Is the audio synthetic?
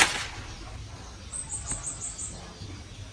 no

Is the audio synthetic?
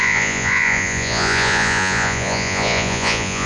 yes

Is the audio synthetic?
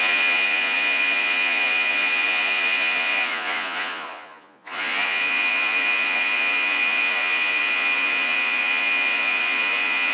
yes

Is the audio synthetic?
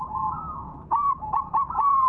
yes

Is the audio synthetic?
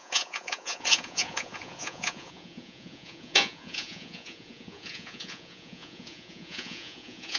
yes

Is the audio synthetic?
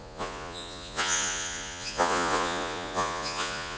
yes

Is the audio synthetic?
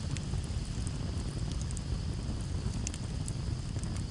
no